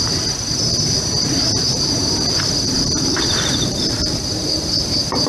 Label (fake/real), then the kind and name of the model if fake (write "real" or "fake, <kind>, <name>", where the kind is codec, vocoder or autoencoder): fake, vocoder, BigVGAN v2